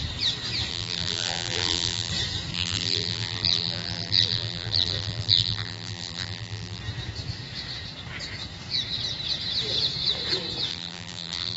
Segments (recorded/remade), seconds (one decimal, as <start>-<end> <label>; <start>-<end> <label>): 0.0-0.7 recorded; 0.7-2.1 remade; 2.1-2.5 recorded; 2.5-6.8 remade; 6.8-10.7 recorded; 10.7-11.6 remade